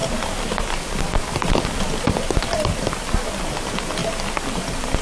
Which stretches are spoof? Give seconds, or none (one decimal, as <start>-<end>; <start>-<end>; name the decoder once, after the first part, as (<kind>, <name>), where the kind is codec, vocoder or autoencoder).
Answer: 0.0-1.4 (vocoder, BigVGAN v2); 2.4-4.0; 4.6-5.0